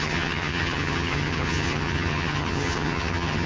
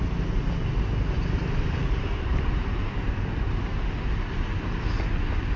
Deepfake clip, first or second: first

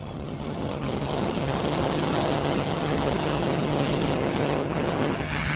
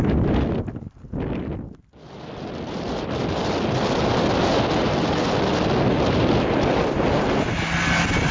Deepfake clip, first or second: first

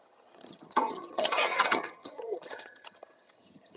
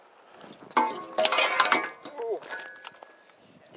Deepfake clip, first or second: first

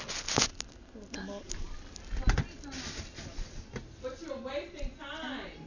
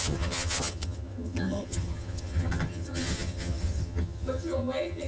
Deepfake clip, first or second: second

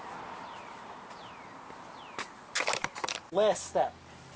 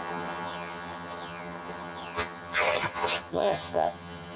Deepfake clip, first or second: second